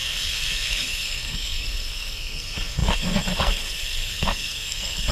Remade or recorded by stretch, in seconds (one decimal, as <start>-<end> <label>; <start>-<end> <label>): 0.0-5.1 remade